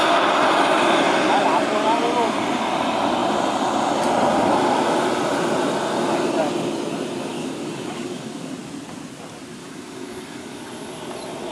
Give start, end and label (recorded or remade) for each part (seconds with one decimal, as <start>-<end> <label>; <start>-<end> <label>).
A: 0.0-7.3 recorded; 7.3-8.6 remade; 8.6-9.6 recorded; 9.6-10.6 remade; 10.6-11.5 recorded